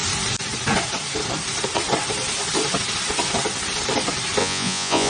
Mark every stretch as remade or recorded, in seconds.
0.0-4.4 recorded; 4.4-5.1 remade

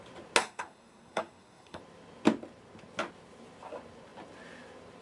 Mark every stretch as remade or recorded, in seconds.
0.0-0.4 recorded; 0.4-1.8 remade; 1.8-5.0 recorded

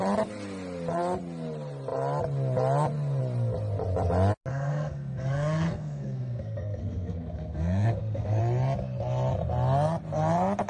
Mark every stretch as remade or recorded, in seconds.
0.0-4.5 recorded; 4.5-8.4 remade; 8.4-10.7 recorded

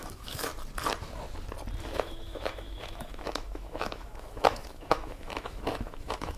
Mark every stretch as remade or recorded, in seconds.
0.0-0.5 remade; 0.5-1.8 recorded; 1.8-6.4 remade